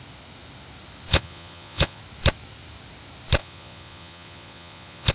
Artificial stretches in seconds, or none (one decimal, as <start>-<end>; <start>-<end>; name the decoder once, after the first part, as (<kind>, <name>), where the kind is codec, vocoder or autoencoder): 1.1-2.0 (vocoder, Vocos); 3.4-5.1

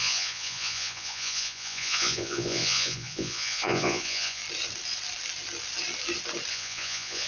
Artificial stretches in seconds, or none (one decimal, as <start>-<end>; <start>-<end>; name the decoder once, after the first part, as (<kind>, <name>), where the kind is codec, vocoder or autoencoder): 0.0-4.4 (vocoder, Vocos); 6.5-7.3

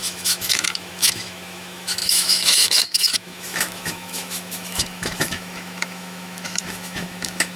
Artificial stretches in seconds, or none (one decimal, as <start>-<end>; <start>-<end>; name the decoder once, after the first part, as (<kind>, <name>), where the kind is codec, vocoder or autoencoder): 0.0-7.6 (autoencoder, DAC-VAE)

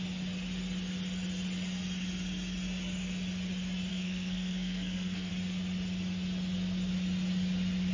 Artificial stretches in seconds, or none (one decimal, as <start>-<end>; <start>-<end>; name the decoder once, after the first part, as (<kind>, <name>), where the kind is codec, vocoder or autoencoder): 3.9-5.3 (codec, SNAC)

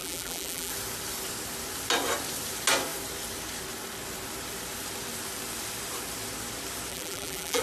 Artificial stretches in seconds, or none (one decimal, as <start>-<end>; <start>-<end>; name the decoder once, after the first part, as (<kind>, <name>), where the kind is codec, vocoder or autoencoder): 0.0-0.7 (vocoder, BigVGAN v2); 6.9-7.6

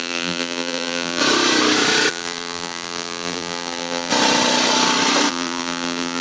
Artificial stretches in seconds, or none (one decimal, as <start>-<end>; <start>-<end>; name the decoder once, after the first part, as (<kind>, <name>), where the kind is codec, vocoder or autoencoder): 0.0-1.2 (vocoder, BigVGAN v2); 2.1-4.1; 5.3-6.2

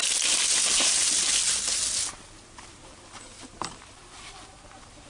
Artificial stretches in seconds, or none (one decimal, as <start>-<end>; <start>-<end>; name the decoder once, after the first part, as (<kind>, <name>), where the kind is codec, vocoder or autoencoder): none